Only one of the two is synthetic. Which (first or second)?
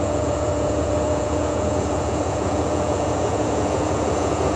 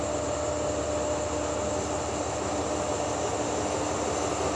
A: first